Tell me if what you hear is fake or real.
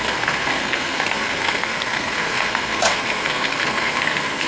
fake